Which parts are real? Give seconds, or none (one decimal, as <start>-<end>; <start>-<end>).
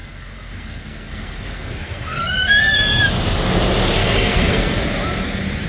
3.0-4.0; 4.8-5.7